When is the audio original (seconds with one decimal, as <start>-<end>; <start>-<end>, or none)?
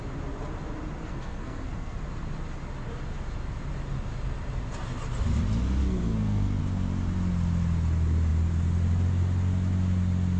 0.0-1.0; 2.0-5.8; 6.6-10.4